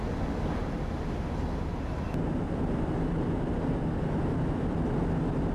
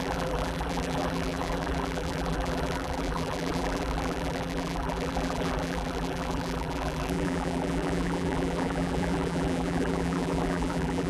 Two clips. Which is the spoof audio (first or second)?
second